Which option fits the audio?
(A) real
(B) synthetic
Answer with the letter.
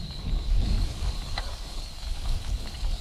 B